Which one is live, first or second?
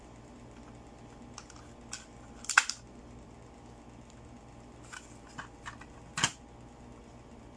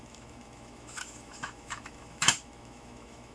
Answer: first